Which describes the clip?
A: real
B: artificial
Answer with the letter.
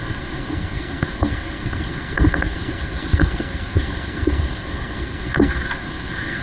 B